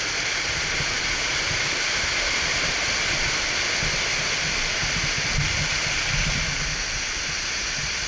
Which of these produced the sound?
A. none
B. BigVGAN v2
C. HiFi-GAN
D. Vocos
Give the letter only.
A